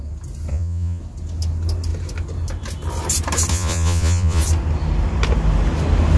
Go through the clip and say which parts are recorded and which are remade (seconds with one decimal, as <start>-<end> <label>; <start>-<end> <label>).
0.0-0.5 recorded; 0.5-1.0 remade; 1.0-3.5 recorded; 3.5-4.4 remade; 4.4-6.2 recorded